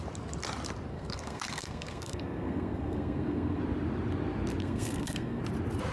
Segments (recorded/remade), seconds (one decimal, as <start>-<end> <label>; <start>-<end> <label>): 0.0-0.9 recorded; 0.9-3.6 remade; 3.6-4.6 recorded; 4.6-5.4 remade; 5.4-5.9 recorded